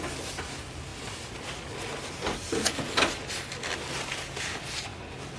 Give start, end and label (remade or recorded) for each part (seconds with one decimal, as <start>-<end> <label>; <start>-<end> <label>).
0.0-5.4 recorded